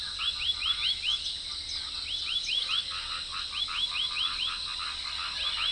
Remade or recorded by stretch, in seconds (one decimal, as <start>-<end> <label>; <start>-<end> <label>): 0.0-5.7 recorded